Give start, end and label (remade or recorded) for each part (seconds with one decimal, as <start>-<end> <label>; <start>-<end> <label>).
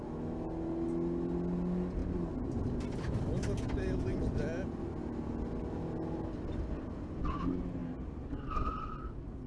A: 0.0-9.5 recorded